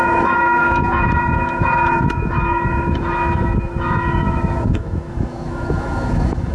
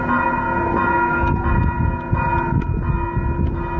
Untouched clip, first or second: second